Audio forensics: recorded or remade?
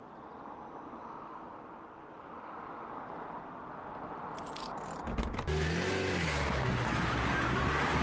recorded